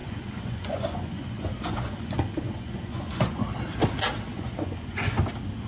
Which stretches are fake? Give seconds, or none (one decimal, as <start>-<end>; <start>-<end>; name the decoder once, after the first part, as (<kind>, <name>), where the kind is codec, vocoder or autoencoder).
0.0-3.4 (vocoder, Vocos); 4.3-5.2